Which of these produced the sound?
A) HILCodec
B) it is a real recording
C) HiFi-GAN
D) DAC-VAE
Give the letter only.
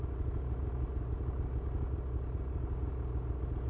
B